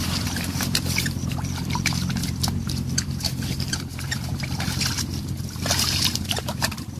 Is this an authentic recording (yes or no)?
no